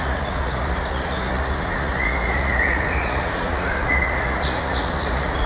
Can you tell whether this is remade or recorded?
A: remade